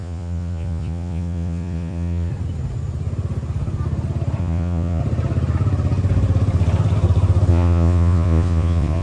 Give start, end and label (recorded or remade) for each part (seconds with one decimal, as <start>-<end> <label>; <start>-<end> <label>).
0.0-2.3 remade; 2.3-4.4 recorded; 4.4-5.0 remade; 5.0-7.5 recorded; 7.5-9.0 remade